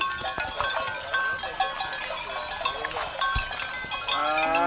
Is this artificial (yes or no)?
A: no